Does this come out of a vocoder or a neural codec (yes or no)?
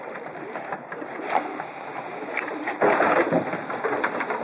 yes